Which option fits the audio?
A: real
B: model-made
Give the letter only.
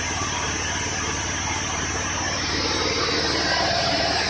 A